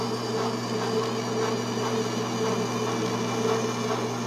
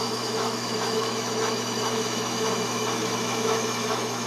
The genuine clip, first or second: first